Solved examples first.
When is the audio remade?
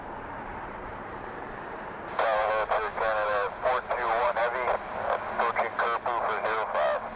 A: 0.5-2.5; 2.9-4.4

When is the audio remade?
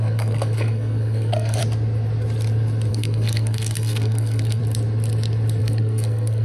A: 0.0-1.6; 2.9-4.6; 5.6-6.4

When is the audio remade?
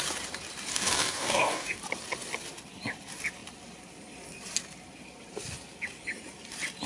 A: 0.7-1.8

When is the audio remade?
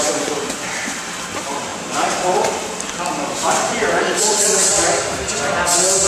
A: none